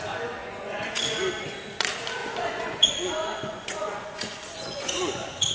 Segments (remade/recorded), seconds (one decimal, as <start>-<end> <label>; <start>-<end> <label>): 0.0-0.4 recorded; 0.4-1.3 remade; 1.3-2.2 recorded; 2.2-5.5 remade